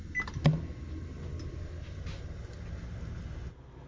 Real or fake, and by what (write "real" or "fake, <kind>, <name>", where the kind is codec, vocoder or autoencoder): real